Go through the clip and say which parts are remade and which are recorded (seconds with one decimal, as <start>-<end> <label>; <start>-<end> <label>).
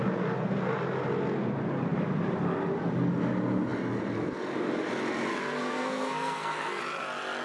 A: 0.0-5.3 recorded; 5.3-6.8 remade; 6.8-7.4 recorded